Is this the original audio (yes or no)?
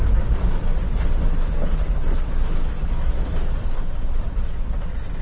yes